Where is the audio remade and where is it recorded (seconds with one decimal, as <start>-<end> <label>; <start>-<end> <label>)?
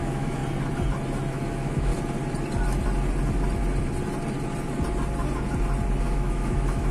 0.0-0.4 remade; 0.4-1.3 recorded; 1.3-1.9 remade; 1.9-6.0 recorded; 6.0-6.9 remade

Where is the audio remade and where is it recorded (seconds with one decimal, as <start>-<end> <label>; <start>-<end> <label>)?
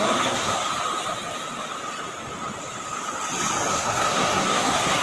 0.0-0.7 remade; 0.7-3.7 recorded; 3.7-5.0 remade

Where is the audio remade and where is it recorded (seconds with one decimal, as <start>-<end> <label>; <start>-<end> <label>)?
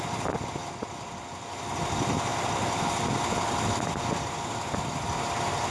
0.0-5.7 recorded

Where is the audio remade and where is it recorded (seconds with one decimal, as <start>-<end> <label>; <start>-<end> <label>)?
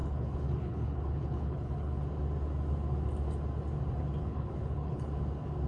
0.0-2.0 remade; 2.0-4.2 recorded; 4.2-5.1 remade; 5.1-5.7 recorded